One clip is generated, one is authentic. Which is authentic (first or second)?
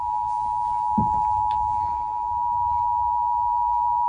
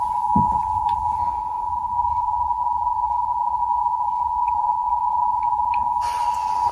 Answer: first